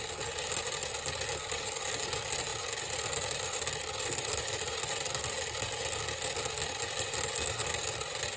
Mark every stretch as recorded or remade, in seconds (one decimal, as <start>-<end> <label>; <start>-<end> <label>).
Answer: 0.0-8.4 recorded